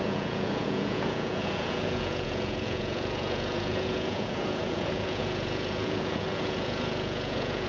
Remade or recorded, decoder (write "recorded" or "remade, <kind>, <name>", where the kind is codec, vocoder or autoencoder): remade, vocoder, Vocos